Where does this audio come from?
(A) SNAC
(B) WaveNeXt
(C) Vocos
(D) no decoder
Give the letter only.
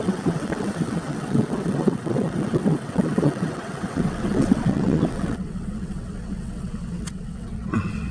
B